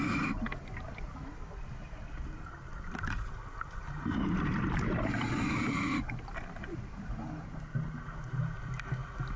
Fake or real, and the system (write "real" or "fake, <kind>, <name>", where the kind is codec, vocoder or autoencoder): real